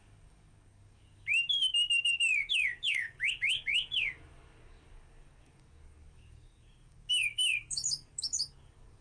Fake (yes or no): yes